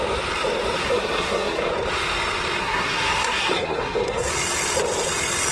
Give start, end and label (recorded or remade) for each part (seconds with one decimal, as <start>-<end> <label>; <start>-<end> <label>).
0.0-0.8 recorded; 0.8-1.7 remade; 1.7-2.6 recorded; 2.6-4.3 remade; 4.3-5.5 recorded